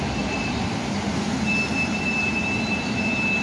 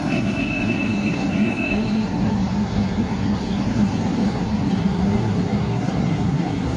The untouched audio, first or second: first